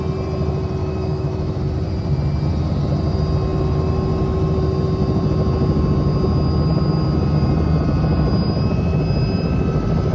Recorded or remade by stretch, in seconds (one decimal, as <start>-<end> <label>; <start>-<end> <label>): 0.0-0.8 recorded; 0.8-1.6 remade; 1.6-10.1 recorded